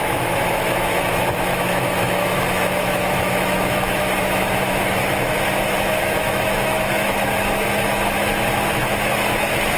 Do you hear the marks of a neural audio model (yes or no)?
yes